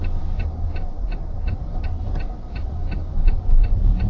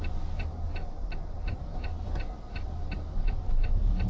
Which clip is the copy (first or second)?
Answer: first